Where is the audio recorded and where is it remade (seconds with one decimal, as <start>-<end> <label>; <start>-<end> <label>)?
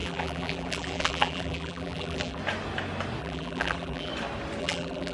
0.0-2.4 remade; 2.4-3.2 recorded; 3.2-4.1 remade; 4.1-4.6 recorded; 4.6-5.1 remade